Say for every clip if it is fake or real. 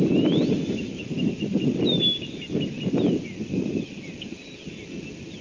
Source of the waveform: real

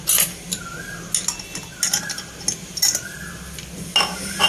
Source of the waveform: real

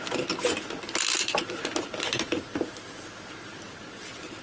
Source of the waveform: real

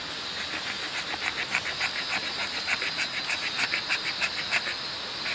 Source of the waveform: real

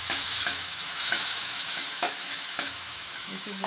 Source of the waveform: fake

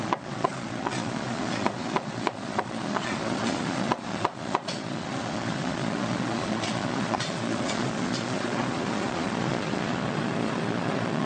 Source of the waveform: fake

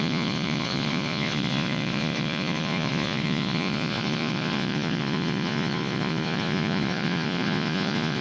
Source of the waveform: fake